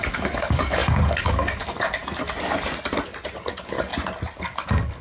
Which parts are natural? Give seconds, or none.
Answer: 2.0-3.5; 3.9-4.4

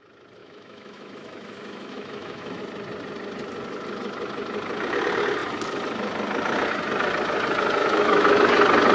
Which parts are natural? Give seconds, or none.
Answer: 0.0-0.4; 2.6-7.8; 8.4-8.9

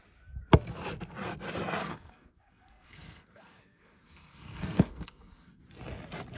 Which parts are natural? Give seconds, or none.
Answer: 0.0-1.8; 5.6-6.4